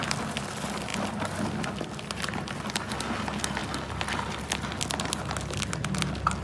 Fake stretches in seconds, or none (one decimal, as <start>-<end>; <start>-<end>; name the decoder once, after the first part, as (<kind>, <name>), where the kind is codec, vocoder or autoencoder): none